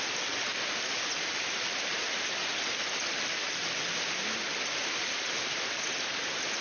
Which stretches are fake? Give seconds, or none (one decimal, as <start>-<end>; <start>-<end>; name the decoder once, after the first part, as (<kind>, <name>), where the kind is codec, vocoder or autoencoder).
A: none